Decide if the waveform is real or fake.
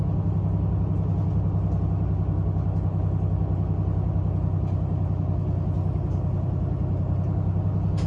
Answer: real